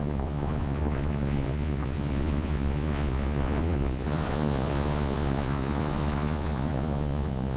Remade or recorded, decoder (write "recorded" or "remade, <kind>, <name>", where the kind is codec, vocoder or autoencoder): remade, vocoder, Vocos